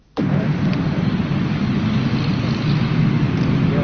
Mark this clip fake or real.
real